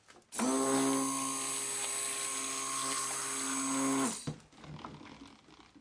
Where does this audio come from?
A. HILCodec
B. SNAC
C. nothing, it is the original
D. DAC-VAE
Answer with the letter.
C